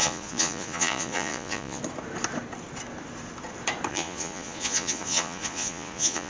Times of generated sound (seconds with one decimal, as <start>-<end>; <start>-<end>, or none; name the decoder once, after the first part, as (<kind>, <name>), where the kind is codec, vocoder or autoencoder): 0.0-1.8 (vocoder, Vocos); 3.9-6.3